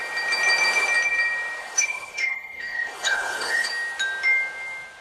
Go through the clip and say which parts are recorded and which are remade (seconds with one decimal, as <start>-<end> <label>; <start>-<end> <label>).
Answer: 0.0-1.6 recorded; 1.6-3.7 remade; 3.7-5.0 recorded